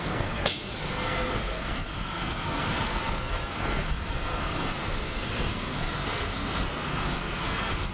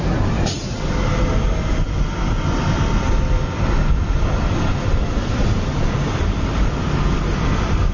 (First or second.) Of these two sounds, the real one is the second